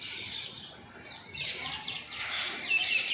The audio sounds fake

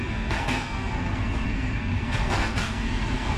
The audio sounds fake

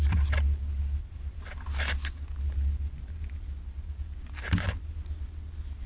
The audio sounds real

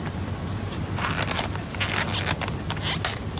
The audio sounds real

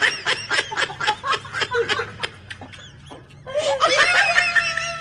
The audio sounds real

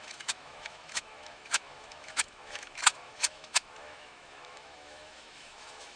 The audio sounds fake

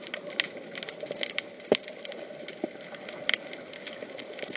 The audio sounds real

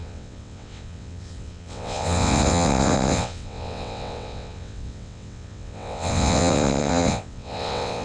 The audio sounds fake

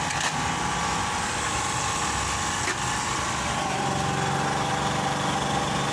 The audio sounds real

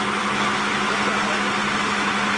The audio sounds real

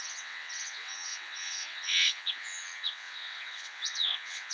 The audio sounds fake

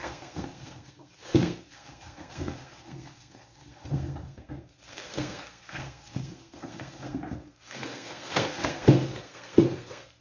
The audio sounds fake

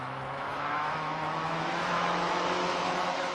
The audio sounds fake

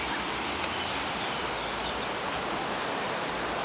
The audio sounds real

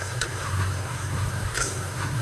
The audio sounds fake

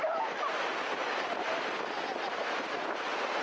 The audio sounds real